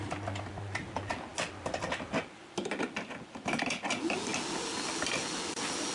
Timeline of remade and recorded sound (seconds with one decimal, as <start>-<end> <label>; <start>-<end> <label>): 0.0-5.9 recorded